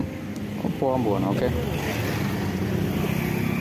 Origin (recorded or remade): recorded